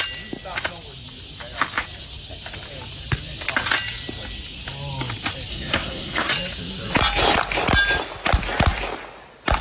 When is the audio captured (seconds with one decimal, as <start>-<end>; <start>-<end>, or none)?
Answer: 0.0-5.5; 6.3-9.6